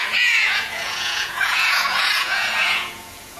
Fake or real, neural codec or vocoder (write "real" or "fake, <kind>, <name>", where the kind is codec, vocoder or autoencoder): fake, vocoder, Vocos